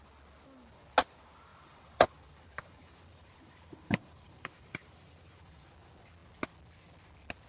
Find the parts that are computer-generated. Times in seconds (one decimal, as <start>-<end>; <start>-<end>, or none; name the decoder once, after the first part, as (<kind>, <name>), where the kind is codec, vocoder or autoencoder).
1.5-5.7 (vocoder, BigVGAN v2)